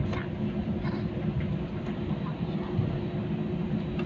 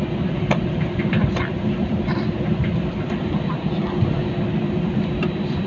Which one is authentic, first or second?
first